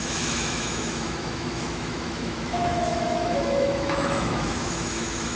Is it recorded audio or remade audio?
remade